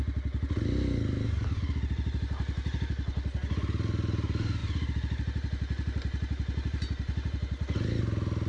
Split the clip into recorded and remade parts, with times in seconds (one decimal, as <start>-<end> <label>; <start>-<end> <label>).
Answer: 0.0-8.5 recorded